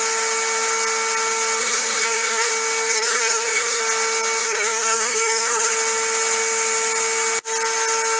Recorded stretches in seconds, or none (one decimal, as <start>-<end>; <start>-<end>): 0.0-1.6; 2.5-2.9; 3.8-4.4; 5.7-8.2